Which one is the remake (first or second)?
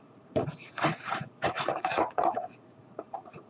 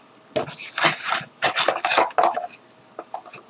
first